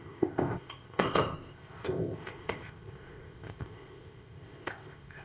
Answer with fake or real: fake